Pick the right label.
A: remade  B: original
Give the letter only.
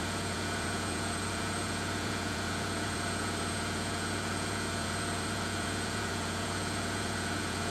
A